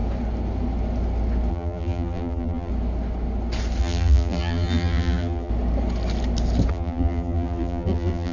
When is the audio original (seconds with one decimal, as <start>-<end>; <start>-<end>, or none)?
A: 0.0-1.5; 2.7-3.8; 5.5-6.7